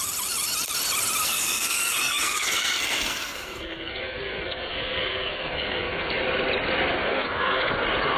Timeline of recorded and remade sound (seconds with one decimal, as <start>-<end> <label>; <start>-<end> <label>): 0.0-1.2 recorded; 1.2-6.1 remade; 6.1-7.0 recorded; 7.0-7.7 remade; 7.7-8.2 recorded